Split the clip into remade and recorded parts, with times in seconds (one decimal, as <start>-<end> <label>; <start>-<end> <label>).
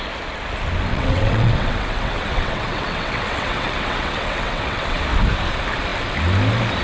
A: 0.0-0.9 recorded; 0.9-5.0 remade; 5.0-6.8 recorded